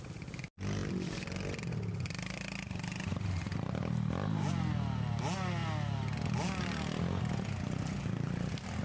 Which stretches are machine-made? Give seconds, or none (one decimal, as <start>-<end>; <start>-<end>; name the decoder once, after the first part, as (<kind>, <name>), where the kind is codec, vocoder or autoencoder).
none

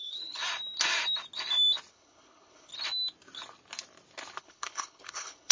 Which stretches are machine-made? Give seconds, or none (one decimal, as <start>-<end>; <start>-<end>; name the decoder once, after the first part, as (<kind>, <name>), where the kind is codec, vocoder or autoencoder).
0.0-0.4 (codec, HILCodec); 1.9-2.7; 4.4-5.5

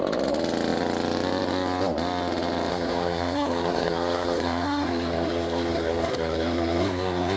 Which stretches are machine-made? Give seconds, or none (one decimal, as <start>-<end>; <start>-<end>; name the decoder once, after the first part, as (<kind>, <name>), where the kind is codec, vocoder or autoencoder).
2.7-7.4 (codec, SNAC)

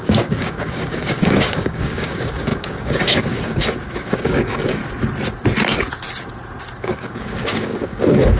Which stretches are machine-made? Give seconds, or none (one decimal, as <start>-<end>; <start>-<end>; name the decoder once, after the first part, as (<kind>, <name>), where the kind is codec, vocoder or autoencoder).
0.0-4.8 (codec, DAC); 6.8-8.4

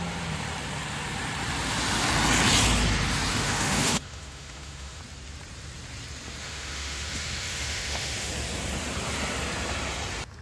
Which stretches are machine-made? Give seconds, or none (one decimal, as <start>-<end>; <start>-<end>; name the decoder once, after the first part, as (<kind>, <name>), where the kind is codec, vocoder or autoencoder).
3.3-5.0 (autoencoder, DAC-VAE); 6.4-8.3

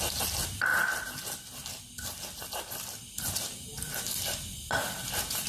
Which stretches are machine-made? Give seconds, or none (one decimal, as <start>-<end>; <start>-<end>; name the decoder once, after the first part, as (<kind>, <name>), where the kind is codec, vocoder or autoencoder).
none

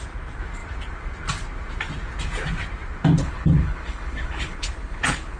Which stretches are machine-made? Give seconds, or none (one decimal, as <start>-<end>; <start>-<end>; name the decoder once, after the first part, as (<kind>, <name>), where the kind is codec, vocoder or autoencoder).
3.2-5.4 (codec, HILCodec)